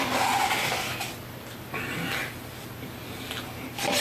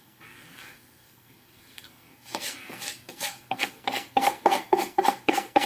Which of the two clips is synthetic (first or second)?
second